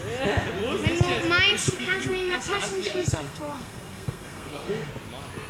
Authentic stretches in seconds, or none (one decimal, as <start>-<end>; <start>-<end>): 0.0-1.6; 4.9-5.5